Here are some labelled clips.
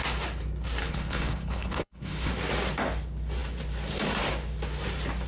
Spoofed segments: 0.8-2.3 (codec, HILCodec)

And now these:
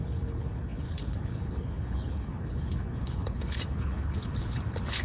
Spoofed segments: 0.0-5.0 (codec, HILCodec)

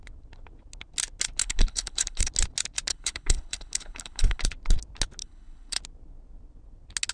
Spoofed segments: 1.4-2.3 (codec, HILCodec); 2.9-4.4; 5.2-5.8